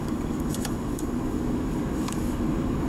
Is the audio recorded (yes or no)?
no